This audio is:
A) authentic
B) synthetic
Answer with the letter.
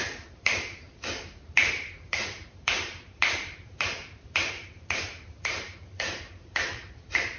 B